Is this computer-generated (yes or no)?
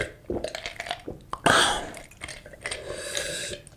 no